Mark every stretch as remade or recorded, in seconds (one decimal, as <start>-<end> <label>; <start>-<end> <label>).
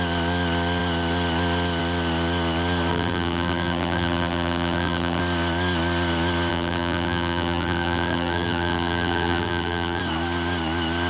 0.0-2.9 recorded; 2.9-5.2 remade; 5.2-6.5 recorded; 6.5-10.0 remade; 10.0-11.1 recorded